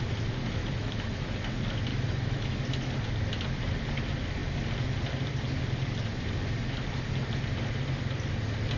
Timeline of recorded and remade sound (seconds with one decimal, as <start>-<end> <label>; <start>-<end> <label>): 0.0-0.6 recorded; 0.6-1.3 remade; 1.3-1.9 recorded; 1.9-2.6 remade; 2.6-8.8 recorded